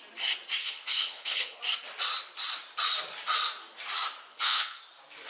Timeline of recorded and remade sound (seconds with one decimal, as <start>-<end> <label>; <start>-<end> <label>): 0.0-0.6 recorded; 0.6-1.6 remade; 1.6-4.3 recorded; 4.3-4.8 remade; 4.8-5.3 recorded